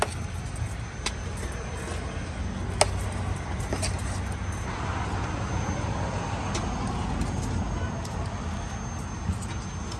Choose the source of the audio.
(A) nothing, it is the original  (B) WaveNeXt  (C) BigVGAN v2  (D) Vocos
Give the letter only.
A